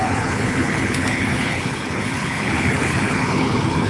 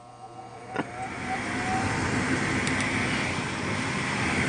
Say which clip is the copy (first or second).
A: first